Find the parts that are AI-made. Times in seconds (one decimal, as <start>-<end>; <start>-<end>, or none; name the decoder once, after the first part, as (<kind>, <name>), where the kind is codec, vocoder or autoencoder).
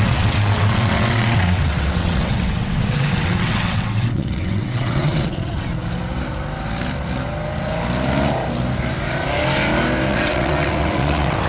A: 0.0-5.7 (vocoder, WaveNeXt); 10.1-11.5